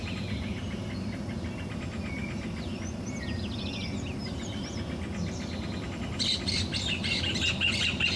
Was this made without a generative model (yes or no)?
yes